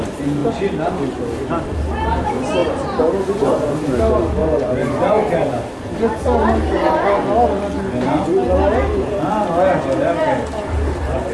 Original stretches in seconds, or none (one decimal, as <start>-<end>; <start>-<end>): 0.0-11.3